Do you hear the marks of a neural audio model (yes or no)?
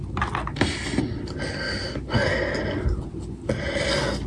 no